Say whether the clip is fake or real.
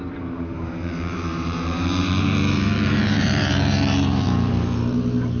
fake